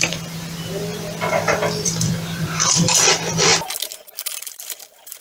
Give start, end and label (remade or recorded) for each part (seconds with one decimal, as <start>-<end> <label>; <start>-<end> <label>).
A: 0.0-3.5 remade; 3.5-4.3 recorded; 4.3-5.2 remade